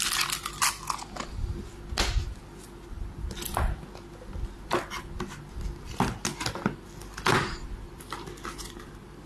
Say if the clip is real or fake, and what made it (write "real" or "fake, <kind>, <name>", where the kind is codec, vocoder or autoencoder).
real